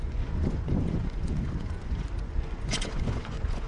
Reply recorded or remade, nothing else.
remade